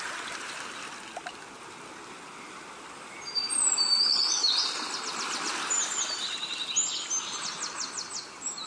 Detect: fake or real real